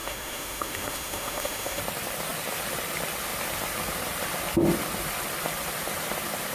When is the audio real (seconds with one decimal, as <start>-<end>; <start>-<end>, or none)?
1.8-6.5